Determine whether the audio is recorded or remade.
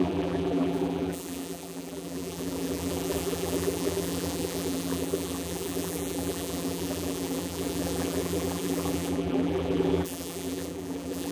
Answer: remade